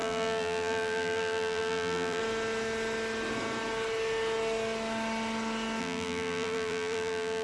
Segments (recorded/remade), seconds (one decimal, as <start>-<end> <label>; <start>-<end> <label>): 0.0-2.2 remade; 2.2-5.8 recorded; 5.8-7.4 remade